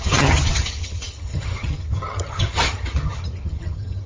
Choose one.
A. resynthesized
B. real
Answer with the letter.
A